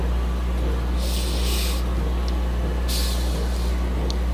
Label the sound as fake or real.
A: real